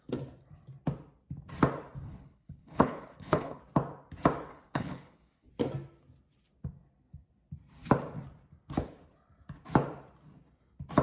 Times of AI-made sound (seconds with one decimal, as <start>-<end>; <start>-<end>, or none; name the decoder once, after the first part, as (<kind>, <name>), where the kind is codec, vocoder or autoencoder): 2.1-3.6 (codec, HILCodec); 4.5-5.5